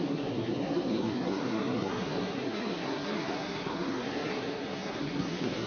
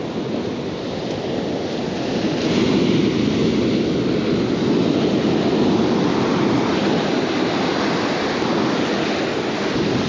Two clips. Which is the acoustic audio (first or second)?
second